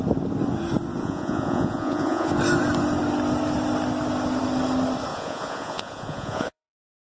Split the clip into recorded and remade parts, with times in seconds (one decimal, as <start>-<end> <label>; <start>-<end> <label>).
0.0-1.0 recorded; 1.0-2.3 remade; 2.3-5.1 recorded; 5.1-7.0 remade